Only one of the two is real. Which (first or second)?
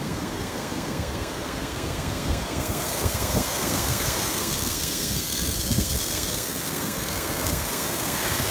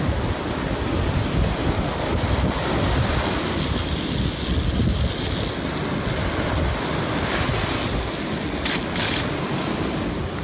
second